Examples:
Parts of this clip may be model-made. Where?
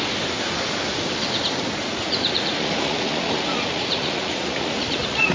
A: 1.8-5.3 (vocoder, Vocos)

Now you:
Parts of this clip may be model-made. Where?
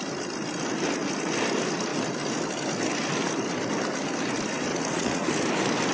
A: 4.7-5.3 (vocoder, Vocos)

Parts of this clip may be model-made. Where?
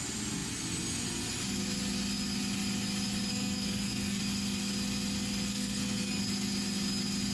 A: 3.3-4.2 (codec, SNAC); 5.5-6.2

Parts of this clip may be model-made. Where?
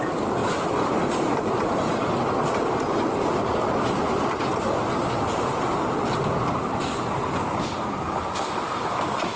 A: none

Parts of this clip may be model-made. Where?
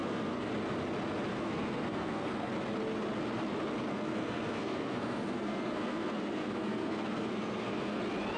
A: 0.0-0.5 (codec, SNAC); 1.3-2.5; 3.9-8.0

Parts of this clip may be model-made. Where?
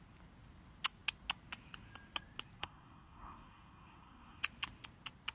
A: 2.6-4.4 (codec, SNAC)